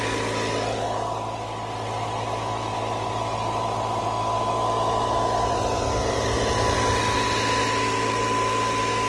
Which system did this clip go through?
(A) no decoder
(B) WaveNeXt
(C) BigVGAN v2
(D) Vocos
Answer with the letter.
A